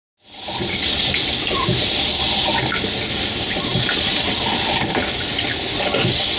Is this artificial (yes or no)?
no